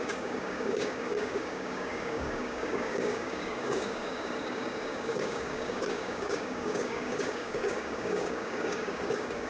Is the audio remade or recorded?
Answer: remade